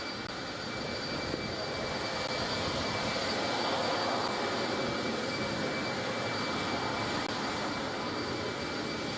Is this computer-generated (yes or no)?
no